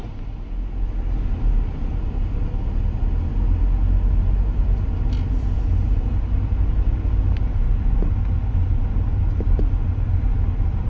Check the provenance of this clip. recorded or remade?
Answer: recorded